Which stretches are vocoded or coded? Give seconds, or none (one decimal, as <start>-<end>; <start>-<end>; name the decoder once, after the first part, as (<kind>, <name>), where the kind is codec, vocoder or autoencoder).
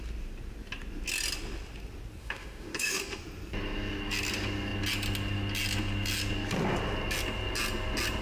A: 2.2-3.2 (autoencoder, DAC-VAE)